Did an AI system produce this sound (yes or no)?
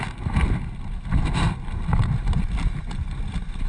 no